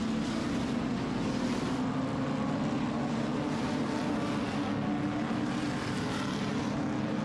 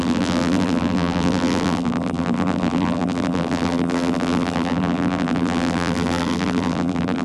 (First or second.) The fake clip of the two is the second